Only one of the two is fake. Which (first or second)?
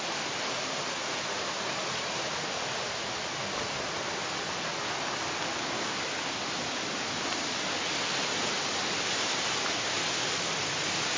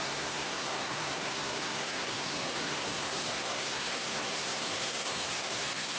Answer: second